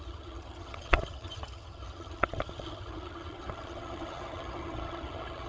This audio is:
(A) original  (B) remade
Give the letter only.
B